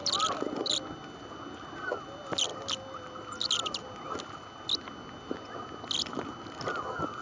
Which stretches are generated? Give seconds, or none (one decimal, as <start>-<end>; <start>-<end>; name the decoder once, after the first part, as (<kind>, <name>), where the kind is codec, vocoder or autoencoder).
none